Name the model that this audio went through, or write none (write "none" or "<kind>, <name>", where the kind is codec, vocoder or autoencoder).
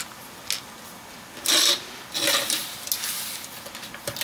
none